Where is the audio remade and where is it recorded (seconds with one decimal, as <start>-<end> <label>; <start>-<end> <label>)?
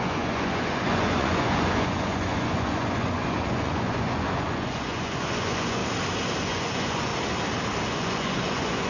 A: 0.0-5.8 remade; 5.8-6.4 recorded; 6.4-7.1 remade; 7.1-7.9 recorded; 7.9-8.9 remade